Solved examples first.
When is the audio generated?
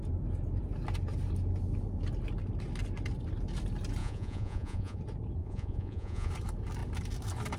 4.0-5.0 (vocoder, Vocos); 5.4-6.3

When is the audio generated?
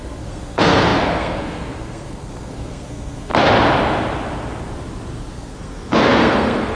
0.0-3.3 (codec, SNAC); 5.2-6.8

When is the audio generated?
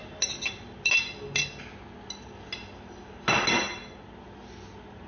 none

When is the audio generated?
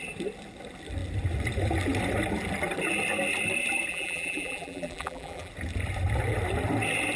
3.9-5.5 (vocoder, BigVGAN v2)